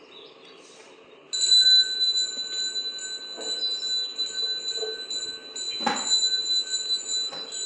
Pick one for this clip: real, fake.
real